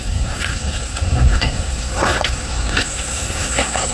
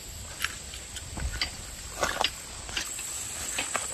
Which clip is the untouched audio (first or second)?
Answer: second